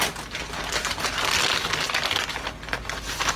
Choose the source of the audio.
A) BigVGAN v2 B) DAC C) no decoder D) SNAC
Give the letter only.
C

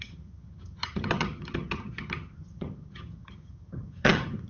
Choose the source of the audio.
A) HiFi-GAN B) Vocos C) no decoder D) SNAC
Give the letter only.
A